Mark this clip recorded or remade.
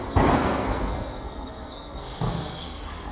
remade